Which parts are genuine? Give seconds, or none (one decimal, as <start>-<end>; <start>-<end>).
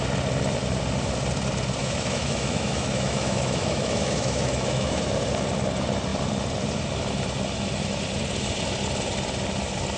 0.0-1.8; 5.0-10.0